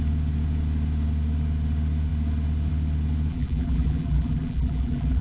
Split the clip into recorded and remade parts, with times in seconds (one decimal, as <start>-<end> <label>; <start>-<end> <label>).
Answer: 0.0-3.3 recorded; 3.3-5.2 remade